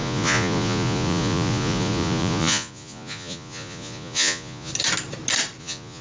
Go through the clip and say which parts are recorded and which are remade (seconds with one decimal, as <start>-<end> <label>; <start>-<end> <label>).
0.0-4.7 remade; 4.7-5.6 recorded; 5.6-6.0 remade